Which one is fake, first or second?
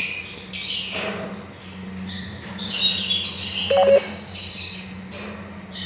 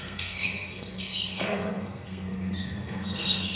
second